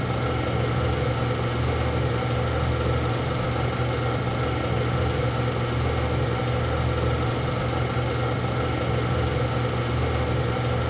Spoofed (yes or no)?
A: no